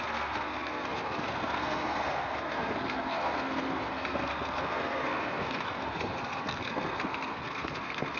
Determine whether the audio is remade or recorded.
remade